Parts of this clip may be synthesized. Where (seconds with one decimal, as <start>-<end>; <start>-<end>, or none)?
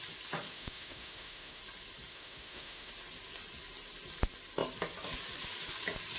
0.5-1.6; 2.1-2.9